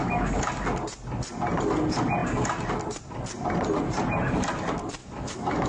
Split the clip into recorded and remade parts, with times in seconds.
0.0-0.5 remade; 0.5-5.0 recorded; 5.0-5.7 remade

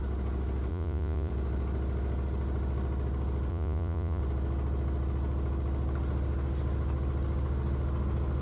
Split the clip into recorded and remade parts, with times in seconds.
0.0-0.7 recorded; 0.7-1.3 remade; 1.3-3.5 recorded; 3.5-4.2 remade; 4.2-8.4 recorded